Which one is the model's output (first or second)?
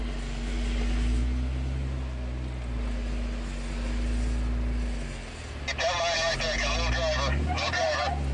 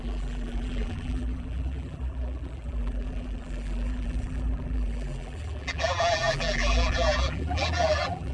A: second